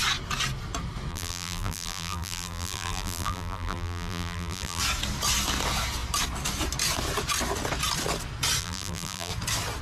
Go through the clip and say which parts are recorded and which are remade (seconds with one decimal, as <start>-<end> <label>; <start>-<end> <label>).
0.0-1.1 recorded; 1.1-4.8 remade; 4.8-8.6 recorded; 8.6-9.3 remade; 9.3-9.8 recorded